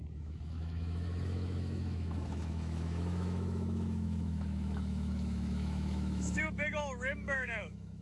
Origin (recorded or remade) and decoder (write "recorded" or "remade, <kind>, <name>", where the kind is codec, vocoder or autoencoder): remade, autoencoder, DAC-VAE